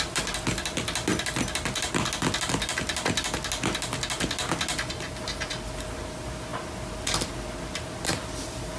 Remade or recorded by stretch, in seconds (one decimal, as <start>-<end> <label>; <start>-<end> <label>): 0.0-8.8 recorded

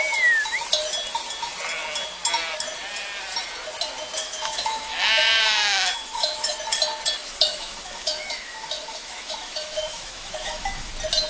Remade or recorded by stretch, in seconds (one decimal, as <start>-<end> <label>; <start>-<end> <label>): 0.0-4.2 recorded; 4.2-6.5 remade; 6.5-7.2 recorded; 7.2-10.9 remade; 10.9-11.3 recorded

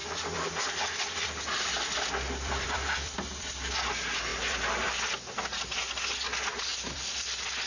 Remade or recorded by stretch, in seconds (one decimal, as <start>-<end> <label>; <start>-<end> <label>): 0.0-3.7 remade; 3.7-4.3 recorded; 4.3-4.9 remade; 4.9-6.7 recorded; 6.7-7.7 remade

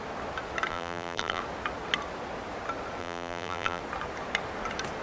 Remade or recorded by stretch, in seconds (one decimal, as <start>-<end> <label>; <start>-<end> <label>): 0.0-0.7 recorded; 0.7-1.4 remade; 1.4-3.0 recorded; 3.0-3.8 remade; 3.8-5.0 recorded

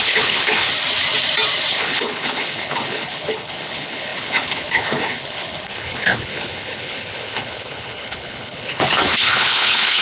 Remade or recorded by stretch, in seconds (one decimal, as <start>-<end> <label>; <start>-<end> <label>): 0.0-0.7 remade; 0.7-1.7 recorded; 1.7-10.0 remade

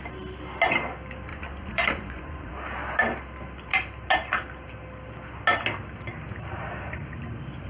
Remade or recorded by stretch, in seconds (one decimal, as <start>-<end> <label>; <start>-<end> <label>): 0.0-1.3 recorded; 1.3-2.5 remade; 2.5-7.7 recorded

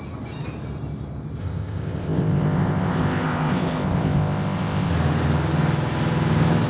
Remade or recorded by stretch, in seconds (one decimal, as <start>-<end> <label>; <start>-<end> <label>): 0.0-1.4 recorded; 1.4-4.9 remade; 4.9-6.7 recorded